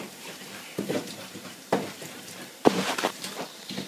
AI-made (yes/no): yes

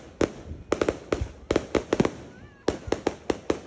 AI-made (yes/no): no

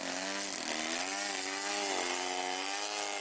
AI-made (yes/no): no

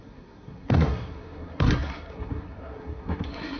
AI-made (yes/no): yes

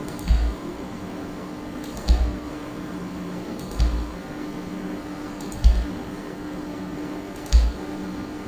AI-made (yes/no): yes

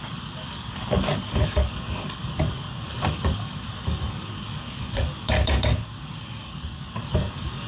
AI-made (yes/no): yes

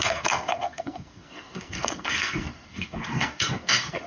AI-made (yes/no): yes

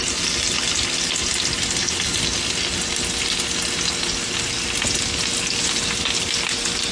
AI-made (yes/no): no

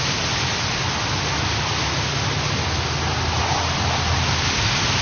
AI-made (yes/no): no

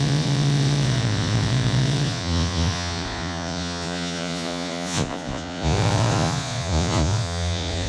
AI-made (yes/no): yes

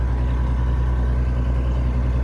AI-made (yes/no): no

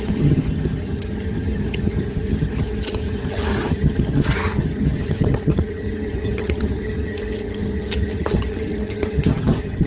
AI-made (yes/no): yes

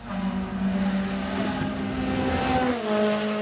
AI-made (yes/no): no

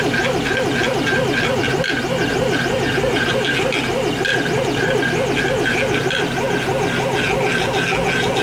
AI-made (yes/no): no